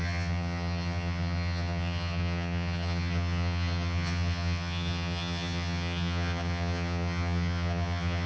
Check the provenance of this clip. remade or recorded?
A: remade